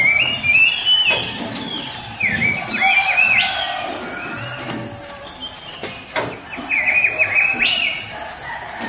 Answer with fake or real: real